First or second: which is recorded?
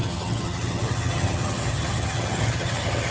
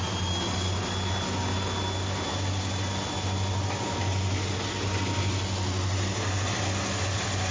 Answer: second